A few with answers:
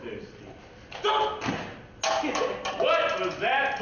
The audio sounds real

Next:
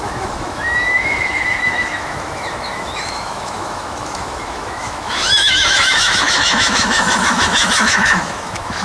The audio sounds fake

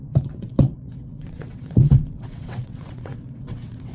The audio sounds fake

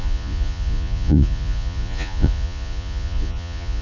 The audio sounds fake